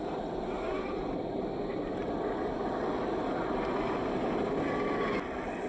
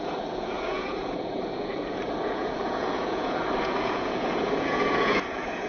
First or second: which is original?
first